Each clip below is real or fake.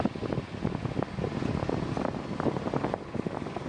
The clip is real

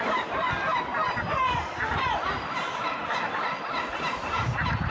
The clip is real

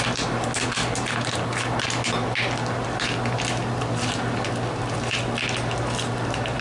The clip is real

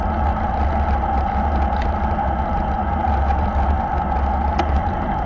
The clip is real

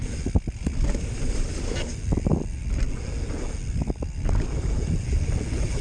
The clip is real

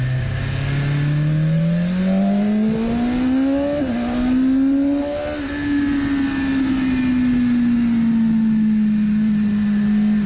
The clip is real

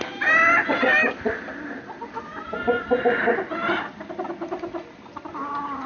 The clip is real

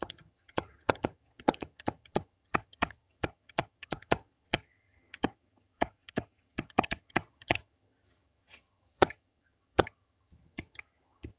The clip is fake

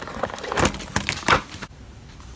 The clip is real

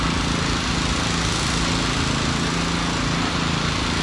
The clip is real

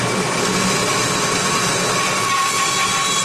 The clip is real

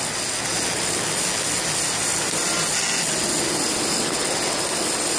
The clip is real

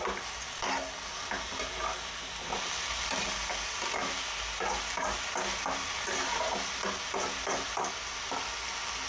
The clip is real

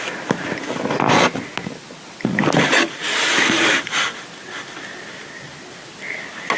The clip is real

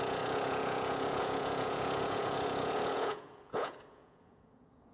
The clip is fake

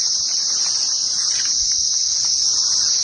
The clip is real